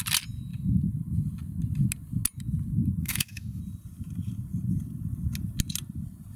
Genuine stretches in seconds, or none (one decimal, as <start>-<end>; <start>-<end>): 0.0-3.0; 3.6-6.4